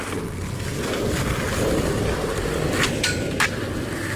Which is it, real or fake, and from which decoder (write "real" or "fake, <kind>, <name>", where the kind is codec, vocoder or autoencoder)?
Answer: real